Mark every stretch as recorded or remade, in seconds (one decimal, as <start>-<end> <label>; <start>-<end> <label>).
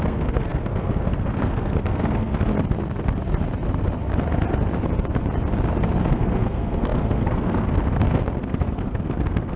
0.0-2.5 remade; 2.5-6.1 recorded; 6.1-9.6 remade